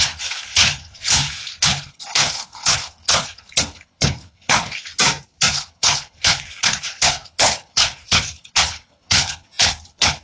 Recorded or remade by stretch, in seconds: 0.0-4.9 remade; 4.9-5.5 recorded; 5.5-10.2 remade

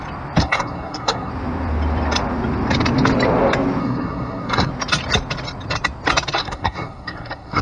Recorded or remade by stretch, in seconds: 0.0-0.4 recorded; 0.4-1.3 remade; 1.3-3.8 recorded; 3.8-4.7 remade; 4.7-6.4 recorded; 6.4-7.6 remade

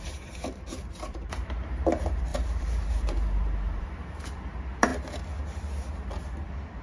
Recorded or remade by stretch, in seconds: 0.0-4.9 remade; 4.9-6.2 recorded; 6.2-6.8 remade

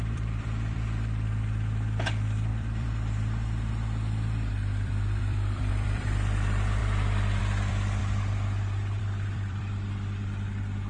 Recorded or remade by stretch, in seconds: 0.0-10.9 remade

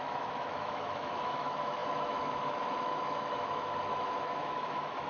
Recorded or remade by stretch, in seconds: 0.0-5.1 remade

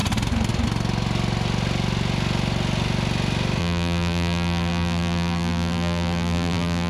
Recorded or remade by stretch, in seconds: 0.0-3.6 recorded; 3.6-6.9 remade

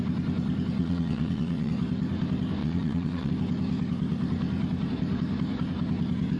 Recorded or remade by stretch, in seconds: 0.0-0.8 recorded; 0.8-1.7 remade; 1.7-2.6 recorded; 2.6-3.3 remade; 3.3-6.4 recorded

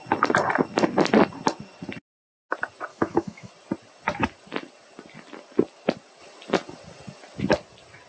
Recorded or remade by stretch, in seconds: 0.0-2.9 recorded; 2.9-3.5 remade; 3.5-8.1 recorded